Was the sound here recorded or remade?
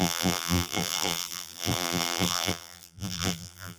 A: remade